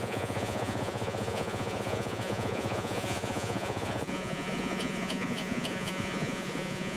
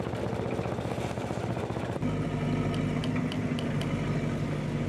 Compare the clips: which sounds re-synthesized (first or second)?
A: first